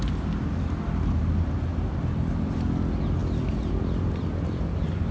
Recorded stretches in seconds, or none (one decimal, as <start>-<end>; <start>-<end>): 0.0-5.1